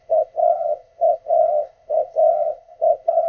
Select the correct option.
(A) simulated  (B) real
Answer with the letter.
A